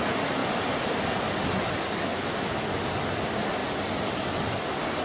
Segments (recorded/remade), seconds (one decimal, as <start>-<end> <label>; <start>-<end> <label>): 0.0-0.4 recorded; 0.4-1.3 remade; 1.3-5.0 recorded